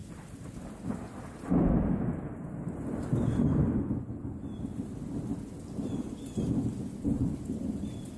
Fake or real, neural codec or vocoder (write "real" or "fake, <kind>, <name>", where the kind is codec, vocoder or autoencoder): real